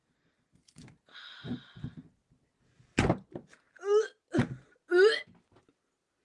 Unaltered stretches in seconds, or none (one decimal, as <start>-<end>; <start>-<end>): 0.0-6.2